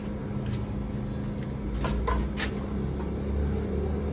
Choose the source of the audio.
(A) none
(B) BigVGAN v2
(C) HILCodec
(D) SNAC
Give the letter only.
A